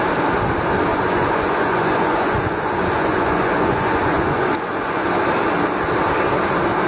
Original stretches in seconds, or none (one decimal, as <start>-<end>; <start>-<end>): 0.0-0.9; 5.0-6.9